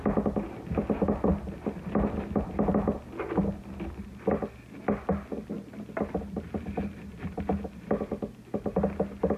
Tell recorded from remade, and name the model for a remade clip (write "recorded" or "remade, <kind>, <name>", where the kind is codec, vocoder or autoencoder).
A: recorded